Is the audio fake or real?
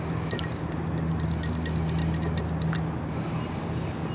real